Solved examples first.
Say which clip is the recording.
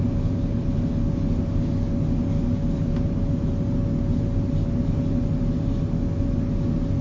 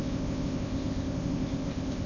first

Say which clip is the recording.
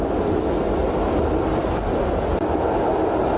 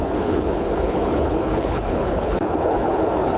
first